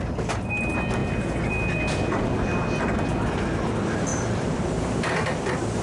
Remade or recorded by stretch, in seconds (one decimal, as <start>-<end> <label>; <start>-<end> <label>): 0.0-4.1 recorded; 4.1-4.7 remade; 4.7-5.8 recorded